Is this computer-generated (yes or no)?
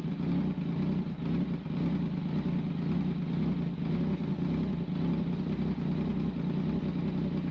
no